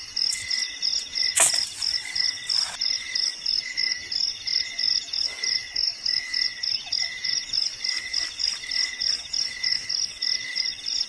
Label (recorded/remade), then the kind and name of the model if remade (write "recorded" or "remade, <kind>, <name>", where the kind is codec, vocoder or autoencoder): recorded